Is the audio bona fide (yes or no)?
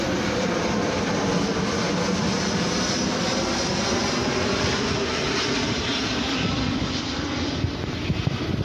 yes